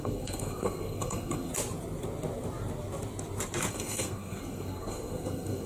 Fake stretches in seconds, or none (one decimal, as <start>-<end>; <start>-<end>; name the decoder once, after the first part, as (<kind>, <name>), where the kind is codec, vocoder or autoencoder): 0.0-1.5 (codec, SNAC); 3.7-5.7